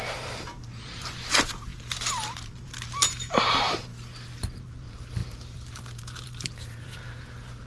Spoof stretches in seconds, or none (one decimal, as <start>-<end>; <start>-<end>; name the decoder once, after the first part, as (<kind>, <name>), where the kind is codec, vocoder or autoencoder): 0.0-3.9 (vocoder, BigVGAN v2); 4.5-7.7